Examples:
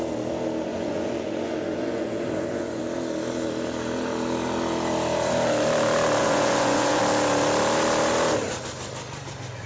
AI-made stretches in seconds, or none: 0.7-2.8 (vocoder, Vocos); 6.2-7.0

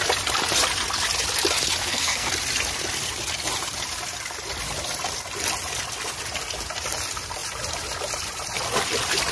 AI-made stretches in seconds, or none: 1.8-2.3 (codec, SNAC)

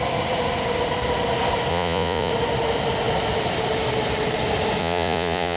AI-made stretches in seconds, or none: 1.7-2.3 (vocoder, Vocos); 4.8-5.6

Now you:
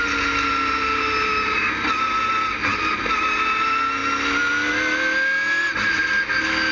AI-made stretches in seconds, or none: none

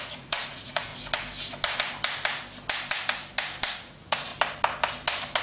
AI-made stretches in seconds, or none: 0.0-0.9 (vocoder, Vocos); 3.7-4.3